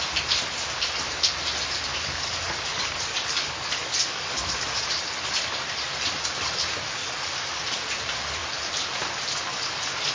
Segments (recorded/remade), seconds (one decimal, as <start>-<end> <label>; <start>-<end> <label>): 0.0-1.9 recorded; 1.9-4.8 remade; 4.8-7.0 recorded; 7.0-7.6 remade; 7.6-10.1 recorded